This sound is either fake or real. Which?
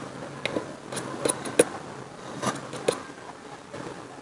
real